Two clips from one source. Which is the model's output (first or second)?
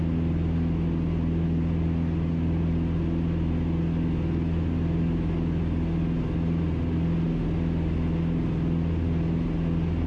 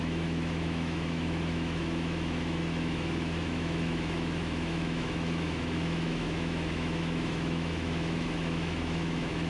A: second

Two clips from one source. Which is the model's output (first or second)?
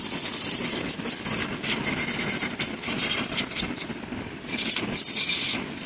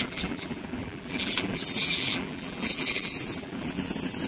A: second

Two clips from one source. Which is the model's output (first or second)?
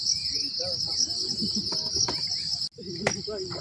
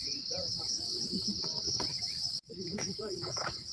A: second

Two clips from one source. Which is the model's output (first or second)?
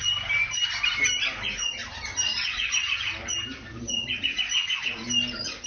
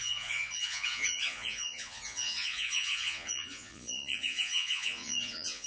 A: second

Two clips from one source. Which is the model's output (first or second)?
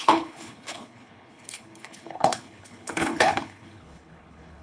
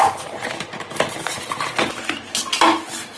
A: first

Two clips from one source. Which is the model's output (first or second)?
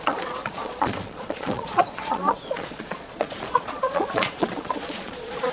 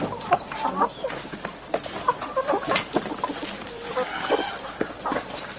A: first